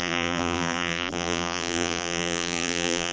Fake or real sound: fake